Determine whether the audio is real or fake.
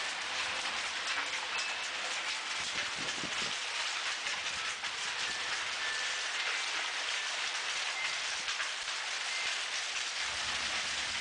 real